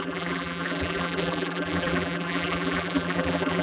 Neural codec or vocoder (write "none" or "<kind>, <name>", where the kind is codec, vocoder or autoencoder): vocoder, BigVGAN v2